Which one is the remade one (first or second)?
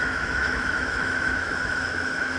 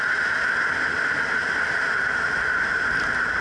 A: first